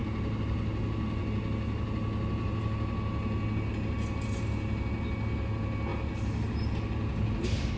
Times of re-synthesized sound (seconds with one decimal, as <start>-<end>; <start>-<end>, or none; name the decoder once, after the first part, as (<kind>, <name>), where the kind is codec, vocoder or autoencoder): none